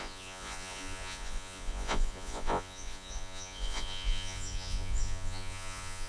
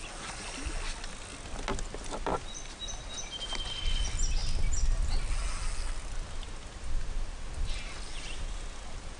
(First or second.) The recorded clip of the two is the second